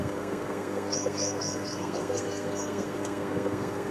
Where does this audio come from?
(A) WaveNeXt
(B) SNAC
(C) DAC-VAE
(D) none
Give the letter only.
B